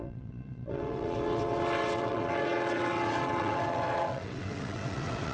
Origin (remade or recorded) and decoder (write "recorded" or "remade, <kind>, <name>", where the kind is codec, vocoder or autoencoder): remade, vocoder, WaveNeXt